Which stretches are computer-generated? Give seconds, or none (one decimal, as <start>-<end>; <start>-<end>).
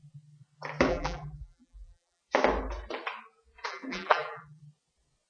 0.9-2.2; 3.7-4.6